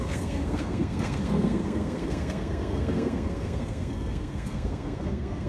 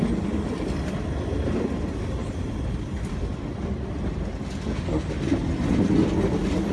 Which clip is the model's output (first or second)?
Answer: first